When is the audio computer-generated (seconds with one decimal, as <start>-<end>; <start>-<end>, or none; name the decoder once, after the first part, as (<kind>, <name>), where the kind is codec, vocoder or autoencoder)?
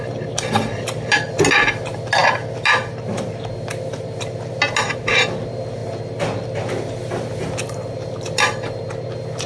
none